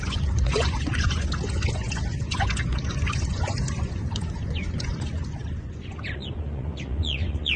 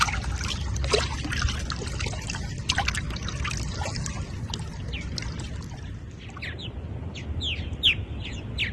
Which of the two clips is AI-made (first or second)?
first